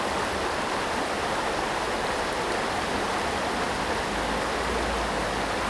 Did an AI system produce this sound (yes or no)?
no